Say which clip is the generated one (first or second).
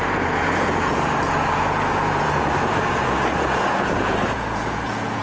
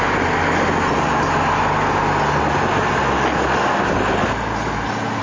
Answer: first